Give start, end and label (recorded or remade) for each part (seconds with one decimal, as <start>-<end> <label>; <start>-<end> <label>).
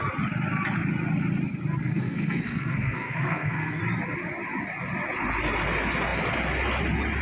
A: 0.0-1.9 recorded; 1.9-3.8 remade; 3.8-7.2 recorded